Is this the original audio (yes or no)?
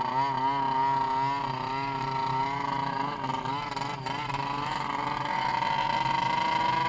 yes